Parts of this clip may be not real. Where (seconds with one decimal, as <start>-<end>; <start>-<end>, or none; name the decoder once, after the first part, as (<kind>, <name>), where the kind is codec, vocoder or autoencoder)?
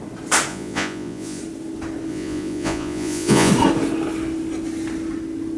0.5-1.4 (vocoder, Vocos); 2.1-3.5